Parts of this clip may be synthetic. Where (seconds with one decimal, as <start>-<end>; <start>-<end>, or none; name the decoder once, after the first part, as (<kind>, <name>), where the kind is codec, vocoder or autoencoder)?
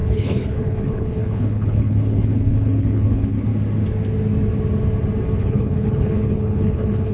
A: 0.0-3.5 (codec, HILCodec); 5.4-7.1